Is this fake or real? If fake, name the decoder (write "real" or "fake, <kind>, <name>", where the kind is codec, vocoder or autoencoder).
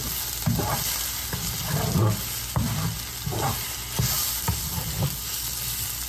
real